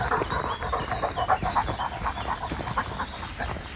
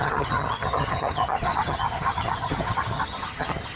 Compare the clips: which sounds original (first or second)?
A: first